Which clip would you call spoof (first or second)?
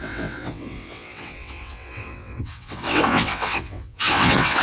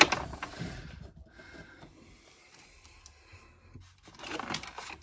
first